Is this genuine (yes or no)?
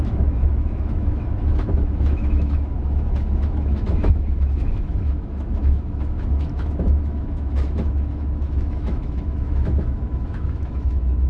no